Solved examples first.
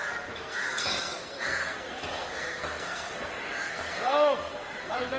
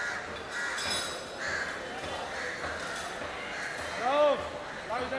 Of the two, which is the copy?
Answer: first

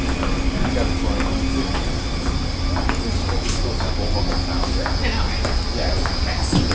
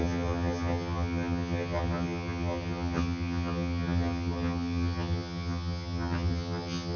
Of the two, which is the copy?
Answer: second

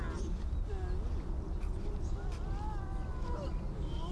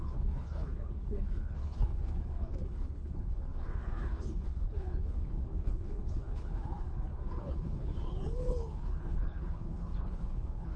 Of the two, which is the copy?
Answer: second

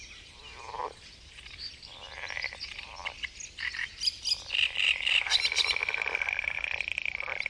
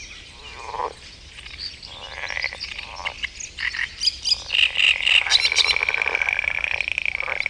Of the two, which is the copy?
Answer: first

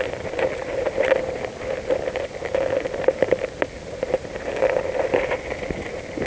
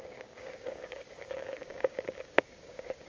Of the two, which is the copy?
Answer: second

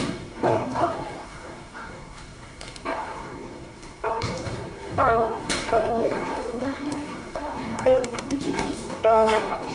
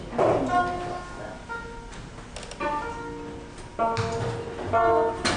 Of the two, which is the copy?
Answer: first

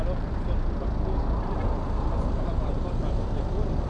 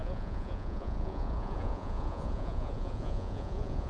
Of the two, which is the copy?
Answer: second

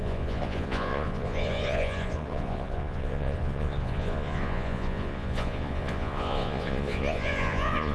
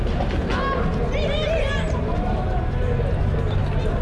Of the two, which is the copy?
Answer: first